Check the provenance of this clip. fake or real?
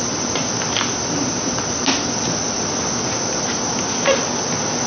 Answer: real